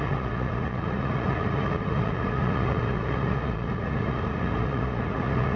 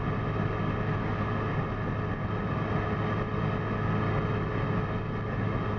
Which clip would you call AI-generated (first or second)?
first